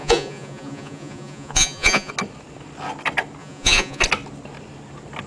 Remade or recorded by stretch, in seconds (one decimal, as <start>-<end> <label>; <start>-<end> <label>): 0.0-2.1 remade; 2.1-3.4 recorded; 3.4-4.0 remade; 4.0-5.3 recorded